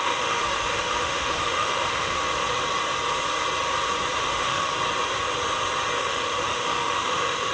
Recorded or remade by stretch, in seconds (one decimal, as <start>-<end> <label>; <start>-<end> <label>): 0.0-2.2 remade; 2.2-4.2 recorded; 4.2-4.7 remade; 4.7-6.0 recorded; 6.0-7.5 remade